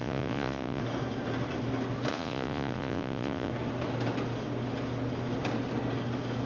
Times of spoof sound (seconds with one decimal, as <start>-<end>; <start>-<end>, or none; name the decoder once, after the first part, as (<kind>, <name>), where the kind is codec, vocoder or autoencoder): 0.0-0.8 (vocoder, Vocos); 2.1-3.5